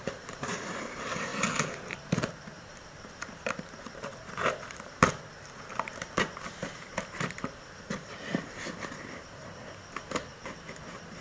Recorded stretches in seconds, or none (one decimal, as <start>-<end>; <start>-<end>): 1.3-1.9